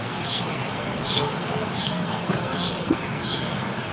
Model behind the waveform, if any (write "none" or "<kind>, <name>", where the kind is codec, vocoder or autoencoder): codec, SNAC